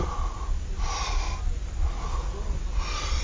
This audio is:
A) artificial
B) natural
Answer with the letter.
B